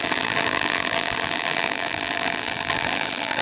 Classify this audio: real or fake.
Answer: fake